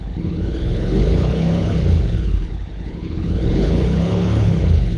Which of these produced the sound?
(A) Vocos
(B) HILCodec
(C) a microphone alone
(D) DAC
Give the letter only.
B